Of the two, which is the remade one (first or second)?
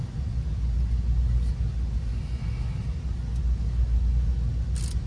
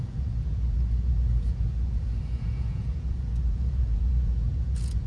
second